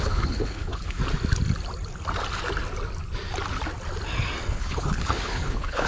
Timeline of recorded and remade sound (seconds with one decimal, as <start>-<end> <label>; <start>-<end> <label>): 0.0-1.0 remade; 1.0-4.5 recorded; 4.5-5.9 remade